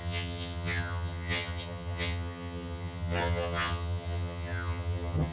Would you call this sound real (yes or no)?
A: no